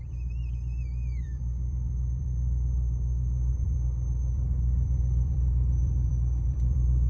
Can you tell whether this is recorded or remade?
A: remade